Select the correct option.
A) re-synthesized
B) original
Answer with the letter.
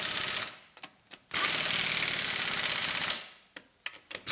B